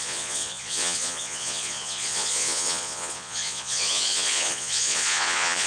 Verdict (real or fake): fake